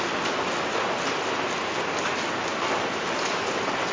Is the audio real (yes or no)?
yes